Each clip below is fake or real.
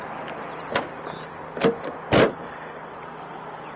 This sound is real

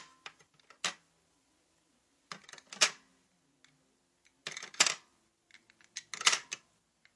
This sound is real